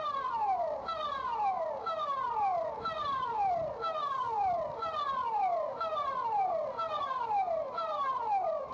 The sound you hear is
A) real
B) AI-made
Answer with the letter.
A